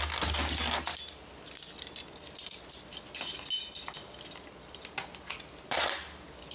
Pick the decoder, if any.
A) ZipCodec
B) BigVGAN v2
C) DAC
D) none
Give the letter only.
D